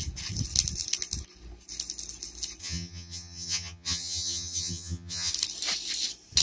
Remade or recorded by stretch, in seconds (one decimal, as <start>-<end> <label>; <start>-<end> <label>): 0.0-2.6 recorded; 2.6-5.3 remade; 5.3-6.4 recorded